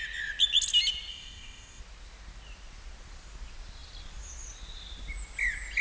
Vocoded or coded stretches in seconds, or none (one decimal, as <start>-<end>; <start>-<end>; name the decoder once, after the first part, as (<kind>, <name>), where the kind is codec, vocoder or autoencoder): 1.1-1.8 (codec, ZipCodec)